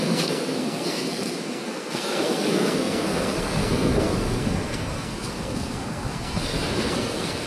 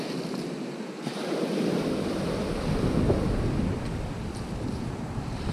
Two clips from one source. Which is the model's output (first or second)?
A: first